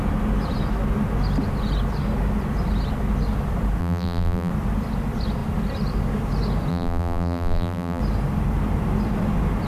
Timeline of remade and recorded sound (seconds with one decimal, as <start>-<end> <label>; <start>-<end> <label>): 0.0-3.8 recorded; 3.8-4.5 remade; 4.5-6.7 recorded; 6.7-8.0 remade; 8.0-9.7 recorded